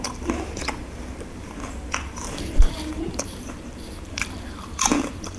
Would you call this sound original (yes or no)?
no